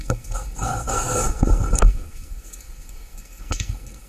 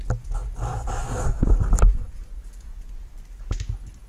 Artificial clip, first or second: first